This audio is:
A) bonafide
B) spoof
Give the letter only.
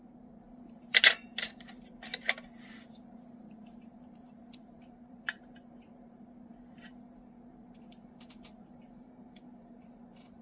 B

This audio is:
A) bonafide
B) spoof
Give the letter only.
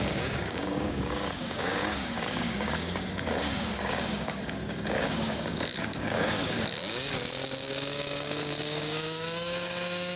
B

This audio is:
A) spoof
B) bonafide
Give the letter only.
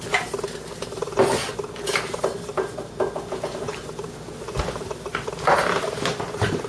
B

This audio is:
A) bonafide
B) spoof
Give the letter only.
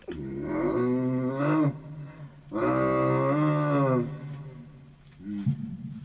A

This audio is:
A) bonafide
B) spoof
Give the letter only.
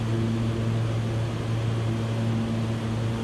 A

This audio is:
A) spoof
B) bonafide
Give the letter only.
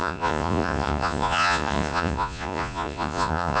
A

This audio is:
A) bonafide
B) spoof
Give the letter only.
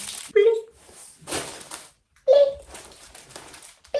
B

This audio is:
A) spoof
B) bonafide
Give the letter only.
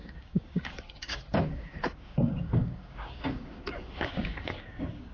A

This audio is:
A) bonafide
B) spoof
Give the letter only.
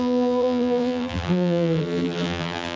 B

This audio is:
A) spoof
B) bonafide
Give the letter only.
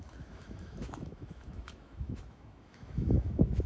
A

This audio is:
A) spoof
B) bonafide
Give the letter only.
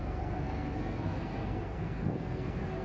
A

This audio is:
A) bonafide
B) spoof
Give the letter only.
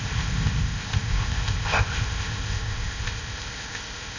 B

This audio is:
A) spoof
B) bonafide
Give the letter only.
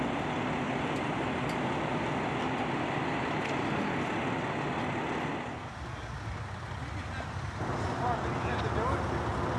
B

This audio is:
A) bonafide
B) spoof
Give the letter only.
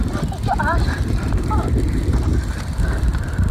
B